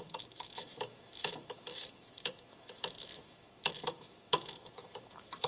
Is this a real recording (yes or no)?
no